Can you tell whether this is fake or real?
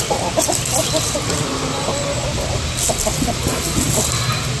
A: real